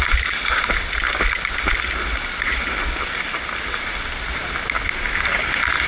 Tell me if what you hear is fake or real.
real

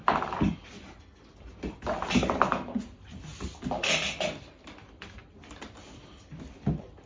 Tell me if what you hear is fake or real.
real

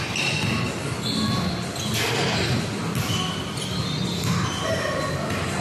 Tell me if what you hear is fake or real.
real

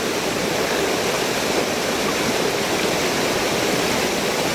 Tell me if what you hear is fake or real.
real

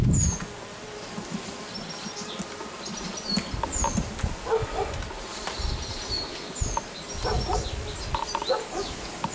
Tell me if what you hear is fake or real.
real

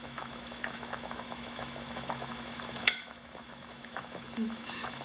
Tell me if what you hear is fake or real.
fake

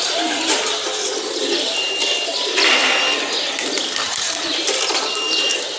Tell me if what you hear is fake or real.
real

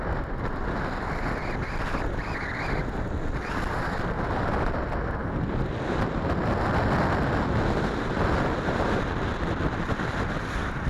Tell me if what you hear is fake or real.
real